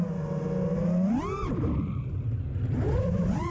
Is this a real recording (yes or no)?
yes